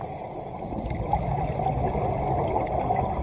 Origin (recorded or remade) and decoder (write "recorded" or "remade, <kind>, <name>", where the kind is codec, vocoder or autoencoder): recorded